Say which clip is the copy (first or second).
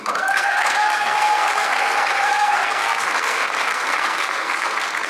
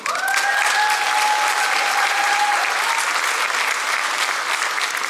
first